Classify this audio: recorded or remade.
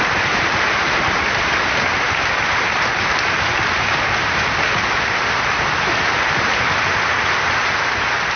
recorded